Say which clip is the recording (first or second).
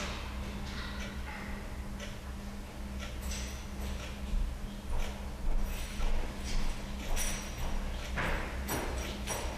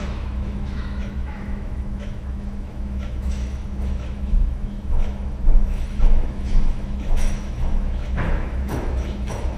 first